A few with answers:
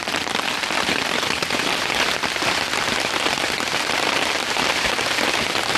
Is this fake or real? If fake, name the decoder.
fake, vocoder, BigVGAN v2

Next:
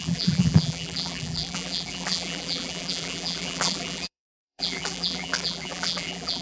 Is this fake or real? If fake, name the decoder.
fake, vocoder, BigVGAN v2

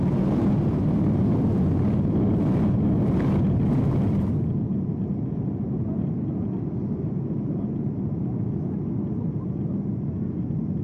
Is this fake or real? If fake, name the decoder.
real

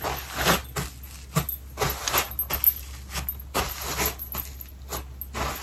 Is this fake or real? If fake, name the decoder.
real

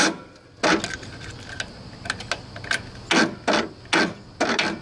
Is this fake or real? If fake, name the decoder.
real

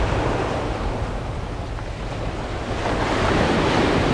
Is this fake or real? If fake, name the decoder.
real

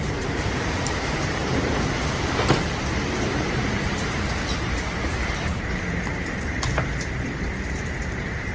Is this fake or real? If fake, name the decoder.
fake, vocoder, BigVGAN v2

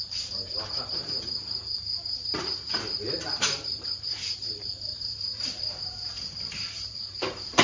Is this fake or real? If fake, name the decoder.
fake, vocoder, BigVGAN v2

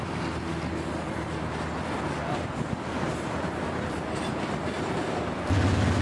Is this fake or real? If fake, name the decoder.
real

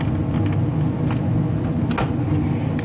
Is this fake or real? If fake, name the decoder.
real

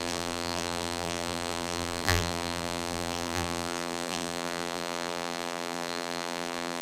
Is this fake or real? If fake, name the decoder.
fake, vocoder, BigVGAN v2